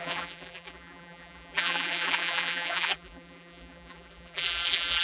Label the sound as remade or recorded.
remade